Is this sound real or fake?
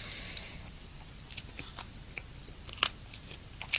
real